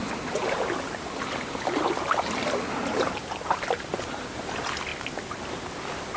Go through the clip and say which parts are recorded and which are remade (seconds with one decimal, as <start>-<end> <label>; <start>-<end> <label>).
0.0-6.2 recorded